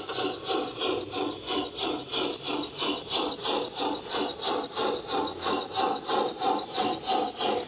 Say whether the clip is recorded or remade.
recorded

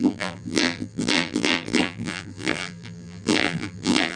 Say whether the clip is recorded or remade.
remade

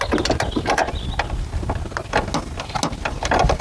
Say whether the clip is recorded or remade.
recorded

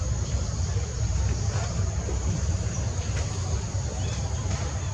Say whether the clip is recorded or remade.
remade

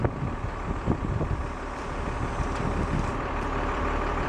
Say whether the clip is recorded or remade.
remade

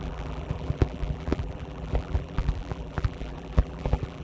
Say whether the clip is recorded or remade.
remade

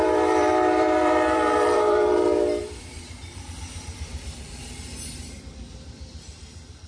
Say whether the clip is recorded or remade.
remade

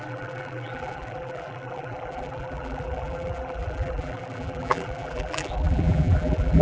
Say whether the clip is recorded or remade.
remade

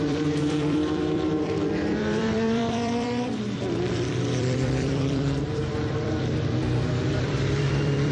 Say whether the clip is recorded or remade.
remade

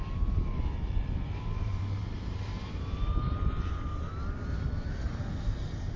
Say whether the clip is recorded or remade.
remade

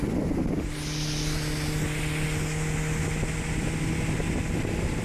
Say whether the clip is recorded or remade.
recorded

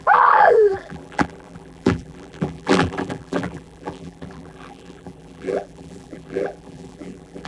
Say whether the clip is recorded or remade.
remade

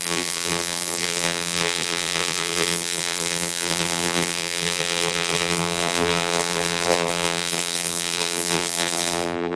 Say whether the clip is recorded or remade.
remade